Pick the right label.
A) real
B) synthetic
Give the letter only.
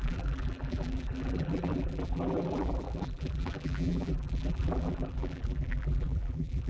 B